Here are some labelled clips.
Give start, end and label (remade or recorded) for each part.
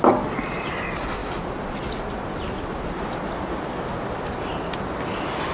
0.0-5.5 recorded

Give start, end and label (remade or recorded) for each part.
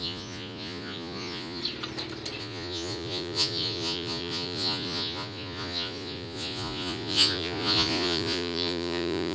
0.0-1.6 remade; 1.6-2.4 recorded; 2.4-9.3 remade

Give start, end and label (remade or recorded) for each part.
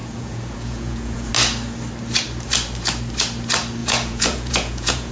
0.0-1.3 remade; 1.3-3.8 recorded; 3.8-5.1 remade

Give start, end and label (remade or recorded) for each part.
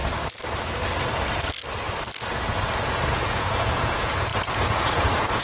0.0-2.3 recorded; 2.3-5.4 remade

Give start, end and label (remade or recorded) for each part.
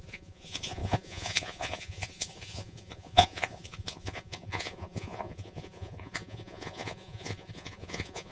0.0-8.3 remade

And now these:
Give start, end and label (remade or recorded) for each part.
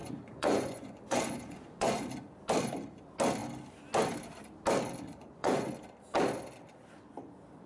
0.0-2.1 remade; 2.1-5.1 recorded; 5.1-5.7 remade; 5.7-7.7 recorded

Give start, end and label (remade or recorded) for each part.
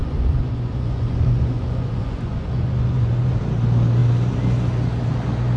0.0-3.4 remade; 3.4-5.6 recorded